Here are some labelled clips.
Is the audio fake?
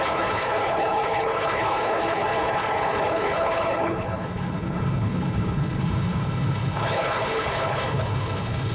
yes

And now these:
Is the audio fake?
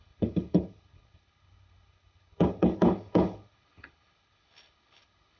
yes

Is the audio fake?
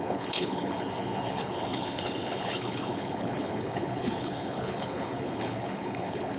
yes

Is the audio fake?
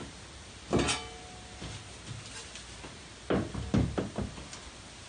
no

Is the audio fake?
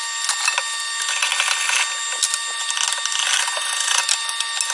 no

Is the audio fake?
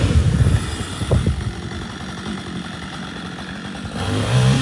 no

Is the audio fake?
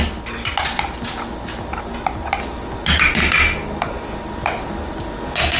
no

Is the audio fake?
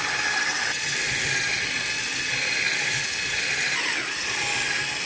no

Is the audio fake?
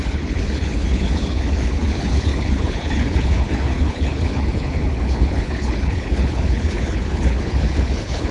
yes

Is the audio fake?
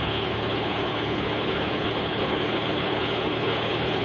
yes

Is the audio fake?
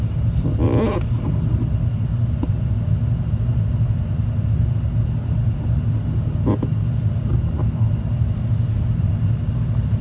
no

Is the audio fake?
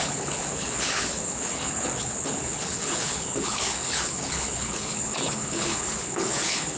yes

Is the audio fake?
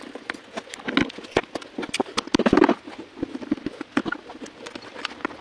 no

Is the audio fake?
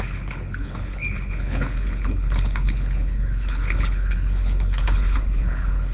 yes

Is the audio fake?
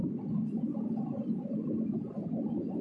no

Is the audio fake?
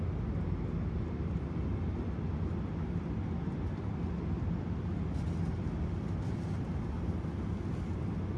no